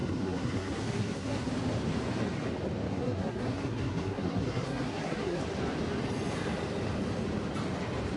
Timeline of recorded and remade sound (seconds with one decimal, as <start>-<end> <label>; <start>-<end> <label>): 0.0-1.5 remade; 1.5-2.9 recorded; 2.9-5.4 remade; 5.4-8.2 recorded